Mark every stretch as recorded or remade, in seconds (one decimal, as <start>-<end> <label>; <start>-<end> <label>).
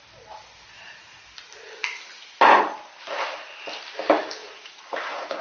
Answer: 0.0-4.4 recorded; 4.4-5.4 remade